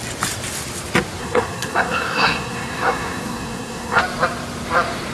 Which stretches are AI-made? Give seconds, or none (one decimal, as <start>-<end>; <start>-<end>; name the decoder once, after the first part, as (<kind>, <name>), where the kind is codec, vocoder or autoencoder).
1.2-4.0 (codec, SNAC)